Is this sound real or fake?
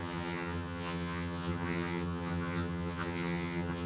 fake